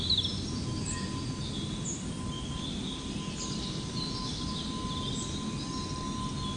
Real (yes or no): yes